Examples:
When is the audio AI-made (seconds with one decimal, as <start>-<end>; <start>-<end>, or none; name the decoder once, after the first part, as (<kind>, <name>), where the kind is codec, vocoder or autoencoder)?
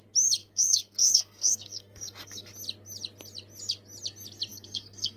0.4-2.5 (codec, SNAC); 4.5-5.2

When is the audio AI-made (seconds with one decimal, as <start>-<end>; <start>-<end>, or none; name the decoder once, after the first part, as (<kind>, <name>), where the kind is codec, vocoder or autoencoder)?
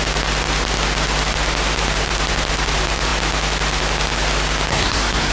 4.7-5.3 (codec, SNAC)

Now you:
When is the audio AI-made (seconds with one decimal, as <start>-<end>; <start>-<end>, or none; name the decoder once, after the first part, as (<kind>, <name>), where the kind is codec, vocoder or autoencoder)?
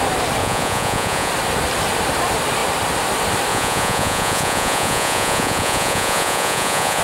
0.4-1.3 (vocoder, Vocos); 3.5-7.0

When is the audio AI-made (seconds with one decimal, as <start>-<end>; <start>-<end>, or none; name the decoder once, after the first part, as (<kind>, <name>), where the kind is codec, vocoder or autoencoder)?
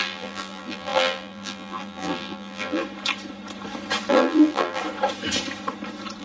0.0-2.8 (vocoder, BigVGAN v2); 4.1-4.8